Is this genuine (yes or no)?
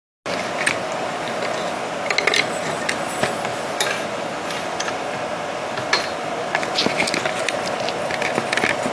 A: yes